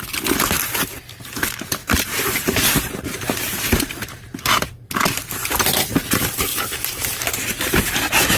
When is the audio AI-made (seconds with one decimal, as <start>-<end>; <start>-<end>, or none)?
1.8-4.2; 6.5-7.4